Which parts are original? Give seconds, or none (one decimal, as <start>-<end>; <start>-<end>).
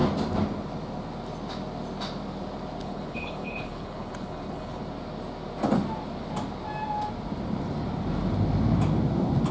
0.0-2.8; 4.8-9.5